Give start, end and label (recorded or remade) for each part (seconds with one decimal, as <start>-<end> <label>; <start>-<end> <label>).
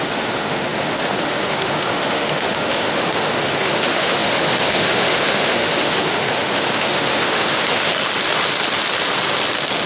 0.0-7.9 remade; 7.9-9.9 recorded